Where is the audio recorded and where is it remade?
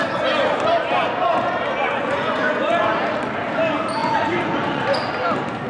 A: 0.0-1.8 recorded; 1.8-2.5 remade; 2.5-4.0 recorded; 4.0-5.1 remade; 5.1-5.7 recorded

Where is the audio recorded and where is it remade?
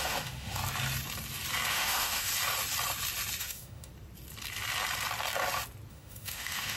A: 0.0-0.6 remade; 0.6-1.7 recorded; 1.7-2.3 remade; 2.3-3.4 recorded; 3.4-3.9 remade; 3.9-5.9 recorded; 5.9-6.8 remade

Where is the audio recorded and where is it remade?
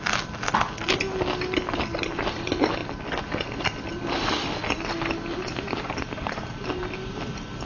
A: 0.0-7.7 recorded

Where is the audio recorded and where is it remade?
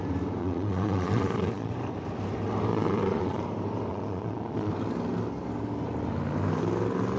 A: 0.0-0.4 recorded; 0.4-1.7 remade; 1.7-2.7 recorded; 2.7-3.4 remade; 3.4-3.9 recorded; 3.9-4.7 remade; 4.7-7.2 recorded